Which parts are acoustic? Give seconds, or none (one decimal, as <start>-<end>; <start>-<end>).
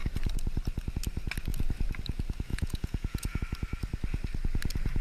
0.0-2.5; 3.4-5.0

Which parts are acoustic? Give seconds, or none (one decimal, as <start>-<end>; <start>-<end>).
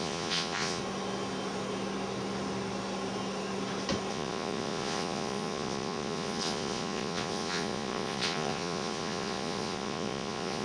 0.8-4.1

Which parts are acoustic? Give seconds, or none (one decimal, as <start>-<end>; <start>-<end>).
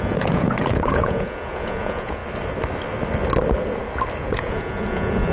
2.2-4.2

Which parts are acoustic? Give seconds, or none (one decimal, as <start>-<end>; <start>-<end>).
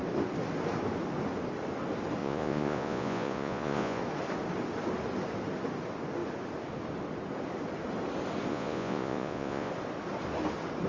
0.0-2.2; 4.0-8.5; 9.7-10.9